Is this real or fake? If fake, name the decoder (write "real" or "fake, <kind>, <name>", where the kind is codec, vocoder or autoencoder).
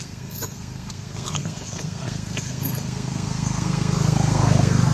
fake, codec, SNAC